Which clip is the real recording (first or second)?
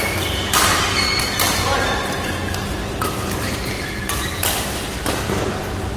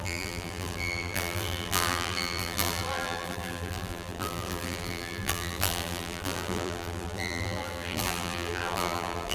first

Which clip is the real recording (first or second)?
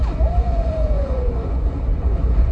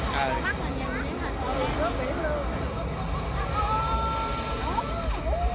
second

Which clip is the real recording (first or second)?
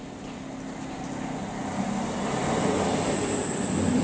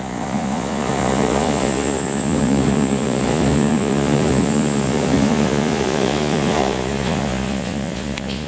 first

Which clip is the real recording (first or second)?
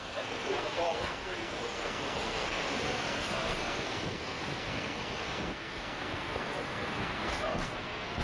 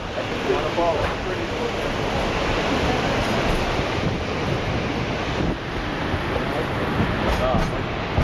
second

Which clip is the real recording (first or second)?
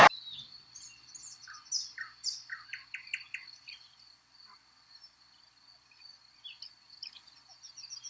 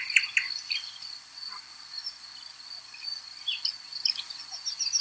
first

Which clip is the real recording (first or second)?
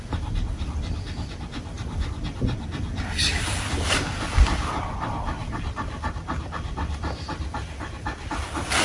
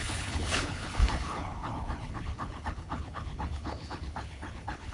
first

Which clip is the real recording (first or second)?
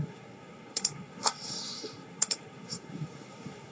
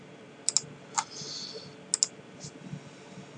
second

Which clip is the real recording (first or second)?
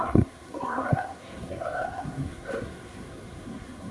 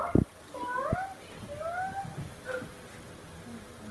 second